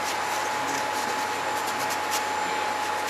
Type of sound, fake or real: real